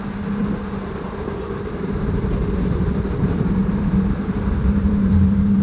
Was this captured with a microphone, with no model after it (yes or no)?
no